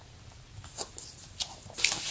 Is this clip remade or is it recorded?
recorded